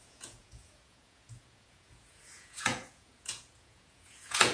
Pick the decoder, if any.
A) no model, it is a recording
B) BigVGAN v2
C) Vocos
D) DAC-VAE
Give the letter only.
C